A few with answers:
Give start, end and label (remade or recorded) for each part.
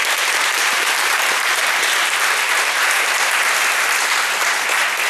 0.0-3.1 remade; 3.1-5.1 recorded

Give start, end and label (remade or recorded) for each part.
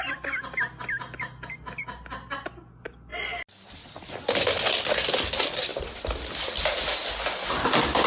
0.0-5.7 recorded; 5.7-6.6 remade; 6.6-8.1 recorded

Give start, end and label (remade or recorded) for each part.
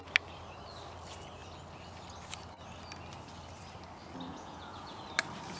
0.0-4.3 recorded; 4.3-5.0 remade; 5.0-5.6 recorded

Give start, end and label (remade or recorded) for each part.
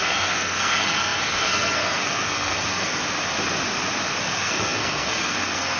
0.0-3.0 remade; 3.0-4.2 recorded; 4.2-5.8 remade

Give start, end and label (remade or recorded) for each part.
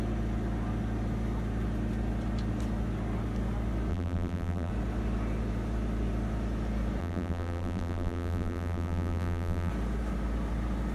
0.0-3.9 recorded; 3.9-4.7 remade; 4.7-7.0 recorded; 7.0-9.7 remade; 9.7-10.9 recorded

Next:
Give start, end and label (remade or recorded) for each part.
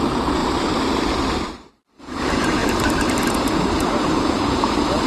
0.0-0.4 remade; 0.4-2.0 recorded; 2.0-2.6 remade; 2.6-3.3 recorded; 3.3-5.1 remade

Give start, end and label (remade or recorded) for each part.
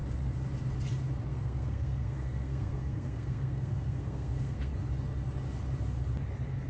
0.0-1.3 recorded; 1.3-4.7 remade; 4.7-6.7 recorded